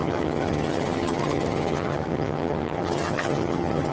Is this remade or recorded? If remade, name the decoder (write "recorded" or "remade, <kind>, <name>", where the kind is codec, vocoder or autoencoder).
remade, vocoder, HiFi-GAN